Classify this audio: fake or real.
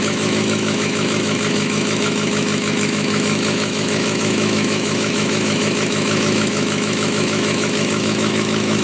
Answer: fake